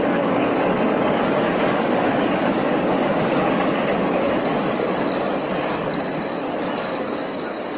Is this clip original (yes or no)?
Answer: no